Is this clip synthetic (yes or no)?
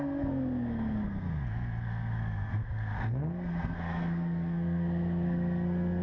yes